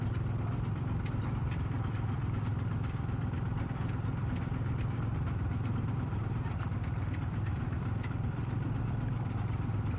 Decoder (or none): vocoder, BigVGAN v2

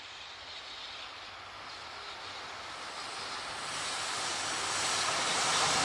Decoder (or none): none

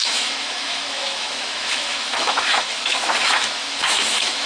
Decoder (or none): autoencoder, DAC-VAE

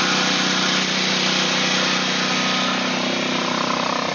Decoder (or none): none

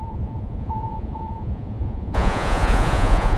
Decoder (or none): vocoder, Vocos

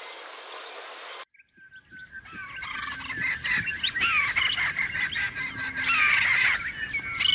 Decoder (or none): none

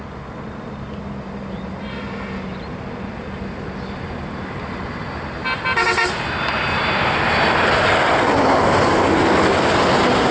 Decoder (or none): none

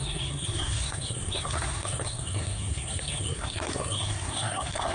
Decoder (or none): codec, SNAC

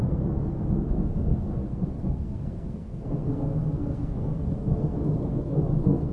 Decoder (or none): codec, SNAC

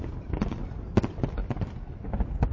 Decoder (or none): none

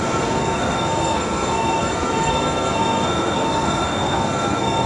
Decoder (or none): codec, SNAC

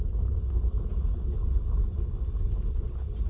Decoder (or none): none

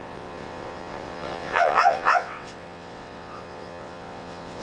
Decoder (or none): vocoder, WaveNeXt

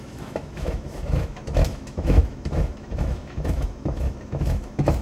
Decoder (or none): autoencoder, DAC-VAE